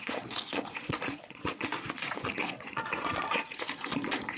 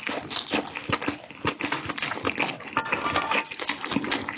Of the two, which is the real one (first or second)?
second